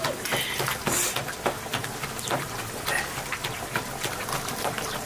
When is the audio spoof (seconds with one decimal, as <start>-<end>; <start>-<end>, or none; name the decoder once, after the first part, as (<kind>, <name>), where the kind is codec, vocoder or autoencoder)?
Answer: 1.7-4.3 (vocoder, BigVGAN v2)